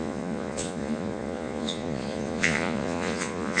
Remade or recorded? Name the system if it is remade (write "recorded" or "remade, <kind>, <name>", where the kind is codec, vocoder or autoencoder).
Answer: remade, vocoder, Vocos